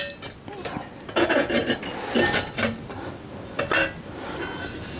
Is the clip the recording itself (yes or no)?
yes